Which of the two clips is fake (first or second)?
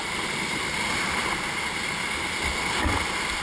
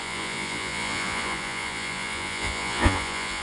second